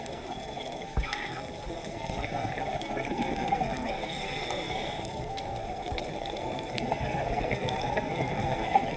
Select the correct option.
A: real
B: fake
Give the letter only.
B